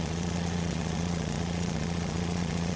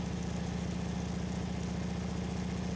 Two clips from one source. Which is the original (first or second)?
second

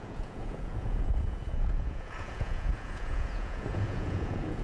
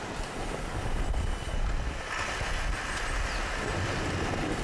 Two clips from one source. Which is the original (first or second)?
second